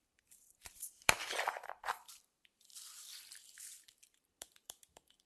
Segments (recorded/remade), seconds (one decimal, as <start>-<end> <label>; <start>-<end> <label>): 0.0-5.3 remade